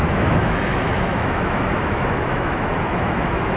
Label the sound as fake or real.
fake